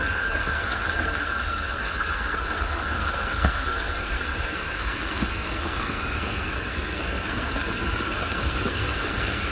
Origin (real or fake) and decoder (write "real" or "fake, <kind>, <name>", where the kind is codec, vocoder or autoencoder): fake, codec, SNAC